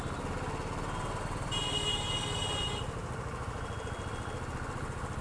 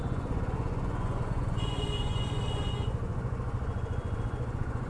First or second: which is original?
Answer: first